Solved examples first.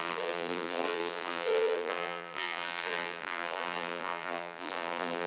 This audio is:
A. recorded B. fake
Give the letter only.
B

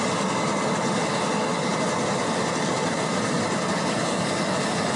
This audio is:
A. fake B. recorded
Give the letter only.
B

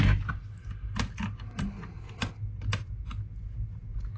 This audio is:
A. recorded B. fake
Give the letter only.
A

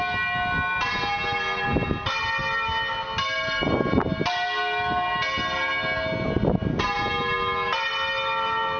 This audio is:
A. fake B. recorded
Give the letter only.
B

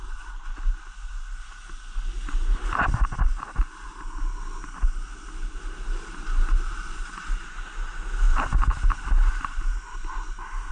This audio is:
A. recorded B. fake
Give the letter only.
A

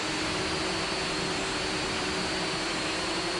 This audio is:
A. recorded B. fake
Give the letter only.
A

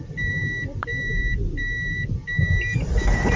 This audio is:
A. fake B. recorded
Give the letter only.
A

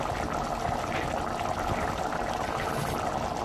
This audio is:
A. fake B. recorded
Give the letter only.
B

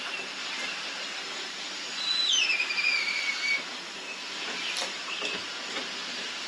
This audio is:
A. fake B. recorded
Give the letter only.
A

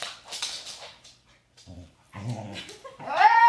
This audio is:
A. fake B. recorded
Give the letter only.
A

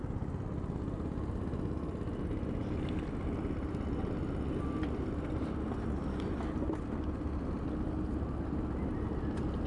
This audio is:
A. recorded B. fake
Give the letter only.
A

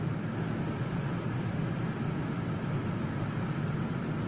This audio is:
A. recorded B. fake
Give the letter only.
A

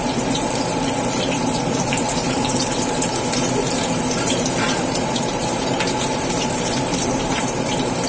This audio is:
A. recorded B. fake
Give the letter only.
B